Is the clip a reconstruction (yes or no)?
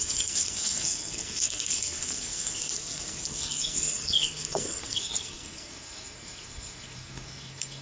yes